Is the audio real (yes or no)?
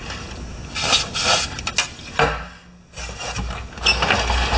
yes